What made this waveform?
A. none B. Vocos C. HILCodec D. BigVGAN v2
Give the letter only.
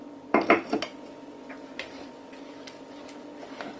A